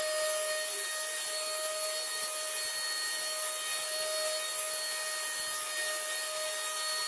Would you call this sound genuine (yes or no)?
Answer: yes